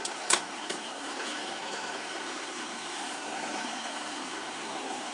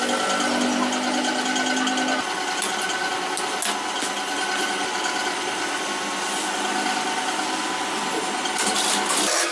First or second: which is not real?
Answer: first